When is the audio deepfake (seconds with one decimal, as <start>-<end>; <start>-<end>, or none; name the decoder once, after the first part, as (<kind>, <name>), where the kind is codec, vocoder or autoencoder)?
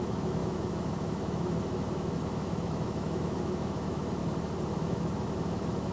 0.0-4.2 (autoencoder, DAC-VAE); 4.7-5.9